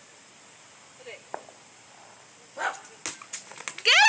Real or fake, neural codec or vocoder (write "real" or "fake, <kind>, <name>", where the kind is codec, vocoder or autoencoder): real